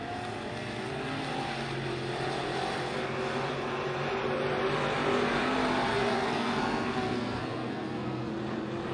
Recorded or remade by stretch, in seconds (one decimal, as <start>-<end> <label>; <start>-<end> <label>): 0.0-5.9 recorded; 5.9-8.3 remade; 8.3-8.9 recorded